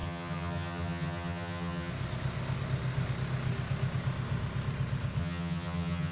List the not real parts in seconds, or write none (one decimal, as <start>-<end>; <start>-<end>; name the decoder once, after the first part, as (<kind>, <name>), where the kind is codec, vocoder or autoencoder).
0.0-1.9 (vocoder, HiFi-GAN); 5.2-6.1